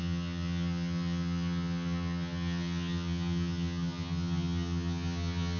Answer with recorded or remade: remade